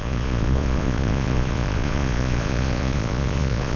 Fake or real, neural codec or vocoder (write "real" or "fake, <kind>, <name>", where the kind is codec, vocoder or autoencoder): fake, vocoder, Vocos